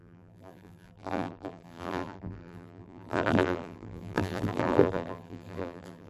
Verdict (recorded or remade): remade